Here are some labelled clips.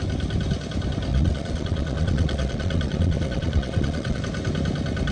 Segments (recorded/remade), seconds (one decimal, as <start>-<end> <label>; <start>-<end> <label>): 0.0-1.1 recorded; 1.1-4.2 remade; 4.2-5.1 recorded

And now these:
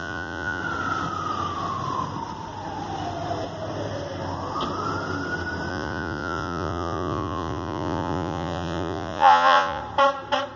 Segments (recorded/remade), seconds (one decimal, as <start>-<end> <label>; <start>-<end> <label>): 0.0-0.6 remade; 0.6-5.7 recorded; 5.7-9.8 remade; 9.8-10.6 recorded

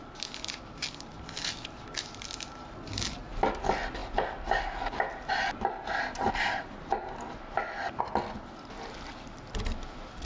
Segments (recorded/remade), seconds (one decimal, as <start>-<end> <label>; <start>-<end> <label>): 0.0-10.3 recorded

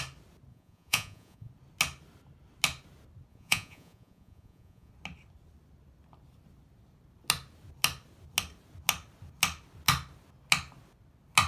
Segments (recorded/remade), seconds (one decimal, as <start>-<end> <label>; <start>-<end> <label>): 0.0-0.5 recorded; 0.5-1.5 remade; 1.5-3.3 recorded; 3.3-4.9 remade; 4.9-11.5 recorded

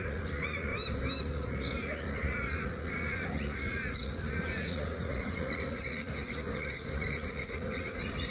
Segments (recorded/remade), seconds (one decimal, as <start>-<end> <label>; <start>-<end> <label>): 0.0-0.7 remade; 0.7-1.2 recorded; 1.2-8.3 remade

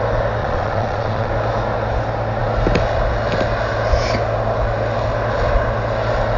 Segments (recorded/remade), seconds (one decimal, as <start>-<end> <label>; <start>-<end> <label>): 0.0-0.4 recorded; 0.4-1.3 remade; 1.3-6.4 recorded

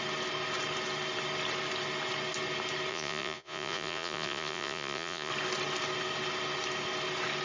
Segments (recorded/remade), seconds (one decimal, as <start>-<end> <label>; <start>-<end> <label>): 0.0-2.9 recorded; 2.9-5.3 remade; 5.3-7.4 recorded

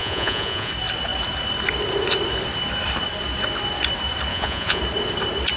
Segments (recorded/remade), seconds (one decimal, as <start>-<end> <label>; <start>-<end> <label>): 0.0-0.7 remade; 0.7-4.3 recorded; 4.3-4.8 remade; 4.8-5.6 recorded